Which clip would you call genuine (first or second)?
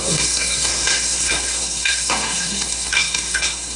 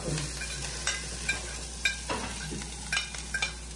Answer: second